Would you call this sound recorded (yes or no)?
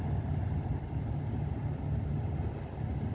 yes